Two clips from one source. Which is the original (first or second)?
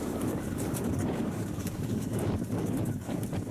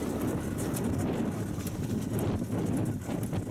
second